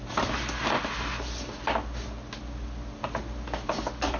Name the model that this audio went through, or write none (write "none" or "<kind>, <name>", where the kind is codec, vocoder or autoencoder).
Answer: none